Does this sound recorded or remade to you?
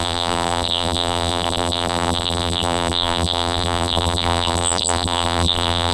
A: remade